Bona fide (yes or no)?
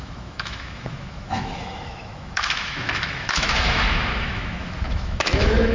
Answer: no